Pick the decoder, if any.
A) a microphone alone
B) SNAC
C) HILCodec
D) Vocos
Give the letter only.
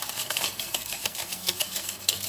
B